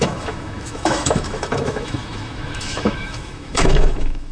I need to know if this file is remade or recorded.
remade